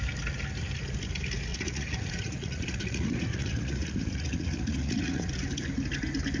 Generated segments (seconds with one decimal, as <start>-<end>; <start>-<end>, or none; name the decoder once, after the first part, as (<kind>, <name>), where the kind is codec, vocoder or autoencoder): 1.5-5.3 (vocoder, Vocos)